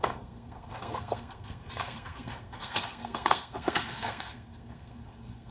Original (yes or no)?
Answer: no